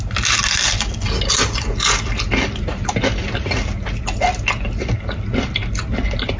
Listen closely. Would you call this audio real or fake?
real